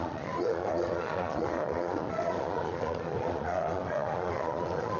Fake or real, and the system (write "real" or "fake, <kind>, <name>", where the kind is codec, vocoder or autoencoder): fake, vocoder, Vocos